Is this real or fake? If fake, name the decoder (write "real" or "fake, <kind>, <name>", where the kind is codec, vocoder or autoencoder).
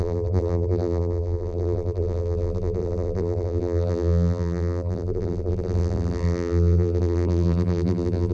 fake, vocoder, BigVGAN v2